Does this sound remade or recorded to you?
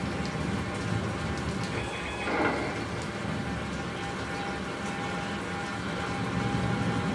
recorded